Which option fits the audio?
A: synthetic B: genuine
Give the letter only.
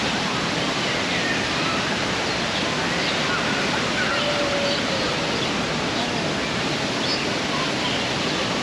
B